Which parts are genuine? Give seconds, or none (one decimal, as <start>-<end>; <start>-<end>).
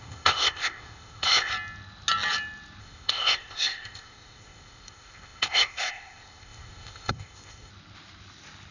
1.5-2.8; 7.7-8.7